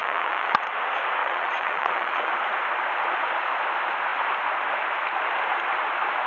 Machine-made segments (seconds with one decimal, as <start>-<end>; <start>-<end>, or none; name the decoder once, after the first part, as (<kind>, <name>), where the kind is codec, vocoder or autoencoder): 0.0-0.7 (vocoder, WaveNeXt); 1.2-2.3